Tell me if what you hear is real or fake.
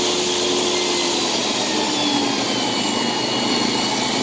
real